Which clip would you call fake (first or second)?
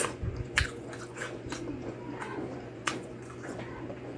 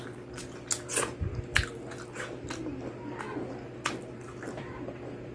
first